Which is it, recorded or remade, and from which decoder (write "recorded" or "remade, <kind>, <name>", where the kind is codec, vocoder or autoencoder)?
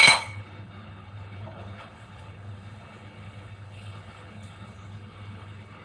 remade, codec, HILCodec